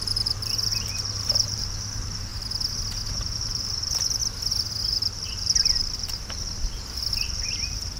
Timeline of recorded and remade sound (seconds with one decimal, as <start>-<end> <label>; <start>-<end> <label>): 0.0-2.3 remade; 2.3-3.1 recorded; 3.1-4.2 remade; 4.2-4.9 recorded; 4.9-8.0 remade